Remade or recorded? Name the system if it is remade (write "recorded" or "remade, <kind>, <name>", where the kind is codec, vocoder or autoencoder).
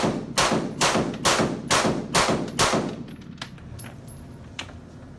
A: recorded